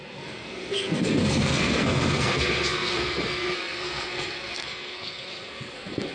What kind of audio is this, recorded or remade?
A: remade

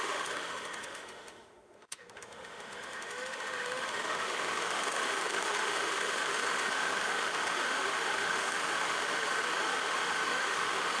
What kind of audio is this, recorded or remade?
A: remade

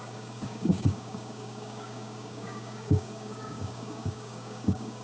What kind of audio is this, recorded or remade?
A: remade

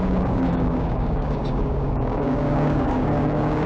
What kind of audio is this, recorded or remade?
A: remade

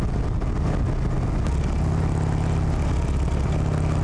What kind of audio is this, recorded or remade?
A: recorded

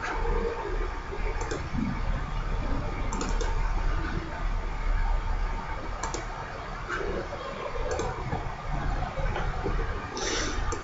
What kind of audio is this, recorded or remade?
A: recorded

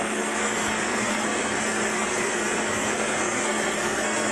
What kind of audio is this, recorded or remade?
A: remade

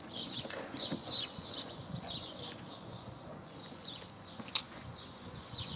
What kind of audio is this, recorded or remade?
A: remade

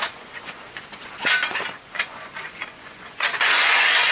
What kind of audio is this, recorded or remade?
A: remade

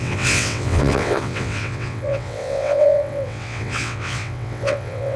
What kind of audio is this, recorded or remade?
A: remade